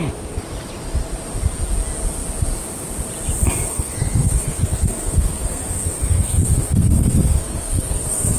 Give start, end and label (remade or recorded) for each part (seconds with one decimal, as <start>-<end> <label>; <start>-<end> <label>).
0.0-3.7 recorded; 3.7-8.4 remade